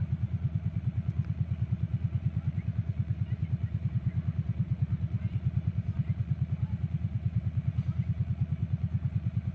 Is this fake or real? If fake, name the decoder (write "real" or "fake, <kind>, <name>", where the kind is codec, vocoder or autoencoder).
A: fake, vocoder, Vocos